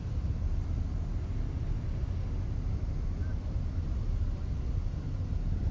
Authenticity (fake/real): real